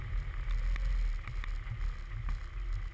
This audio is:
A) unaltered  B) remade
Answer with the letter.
A